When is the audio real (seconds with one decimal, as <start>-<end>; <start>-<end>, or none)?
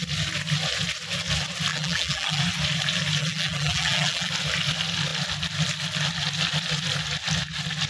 0.0-1.7; 2.4-3.2; 4.3-7.9